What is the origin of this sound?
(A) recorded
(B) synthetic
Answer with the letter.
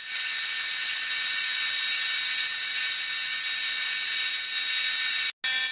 A